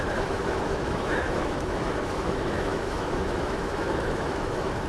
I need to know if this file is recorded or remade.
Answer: remade